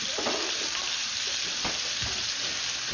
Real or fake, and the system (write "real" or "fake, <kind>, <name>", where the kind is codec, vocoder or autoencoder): real